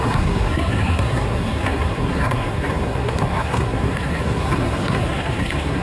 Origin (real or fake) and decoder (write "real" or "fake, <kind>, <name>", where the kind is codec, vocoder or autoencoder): fake, codec, SNAC